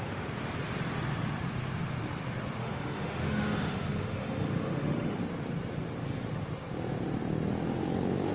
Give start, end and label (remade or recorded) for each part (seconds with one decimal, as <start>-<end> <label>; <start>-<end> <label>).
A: 0.0-2.6 recorded; 2.6-5.2 remade; 5.2-8.3 recorded